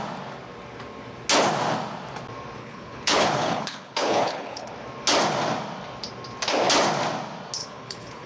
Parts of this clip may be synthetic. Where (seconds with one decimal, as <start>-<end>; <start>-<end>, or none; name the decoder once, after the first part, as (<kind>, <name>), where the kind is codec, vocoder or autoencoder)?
2.6-4.7 (codec, HILCodec); 7.6-8.3